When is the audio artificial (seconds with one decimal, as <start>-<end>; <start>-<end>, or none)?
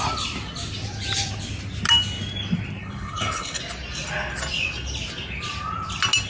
2.8-3.6